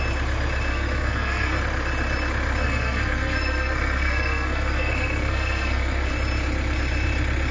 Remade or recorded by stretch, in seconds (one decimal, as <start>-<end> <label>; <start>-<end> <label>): 0.0-0.7 recorded; 0.7-1.6 remade; 1.6-2.6 recorded; 2.6-6.1 remade; 6.1-7.5 recorded